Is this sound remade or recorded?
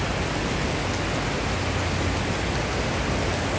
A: recorded